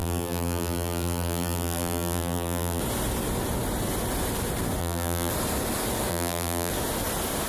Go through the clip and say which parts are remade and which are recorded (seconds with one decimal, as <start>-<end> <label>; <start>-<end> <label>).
0.0-2.8 remade; 2.8-4.8 recorded; 4.8-5.3 remade; 5.3-6.1 recorded; 6.1-6.7 remade; 6.7-7.5 recorded